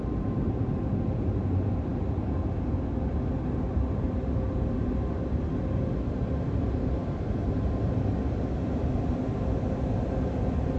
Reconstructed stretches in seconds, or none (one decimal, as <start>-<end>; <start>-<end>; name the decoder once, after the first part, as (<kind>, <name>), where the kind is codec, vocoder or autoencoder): none

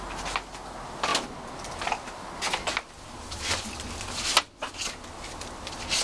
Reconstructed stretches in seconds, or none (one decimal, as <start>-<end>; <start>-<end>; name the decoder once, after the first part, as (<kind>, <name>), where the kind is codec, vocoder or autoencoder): none

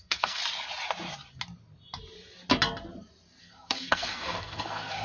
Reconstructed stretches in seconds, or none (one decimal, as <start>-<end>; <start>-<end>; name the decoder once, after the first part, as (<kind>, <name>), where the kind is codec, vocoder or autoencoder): 0.0-0.4 (codec, SNAC); 3.4-5.0

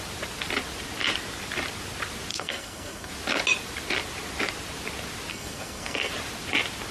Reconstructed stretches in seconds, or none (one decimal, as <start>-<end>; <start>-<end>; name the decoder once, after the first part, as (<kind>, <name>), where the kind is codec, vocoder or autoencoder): 2.3-3.1 (codec, SNAC); 5.3-6.1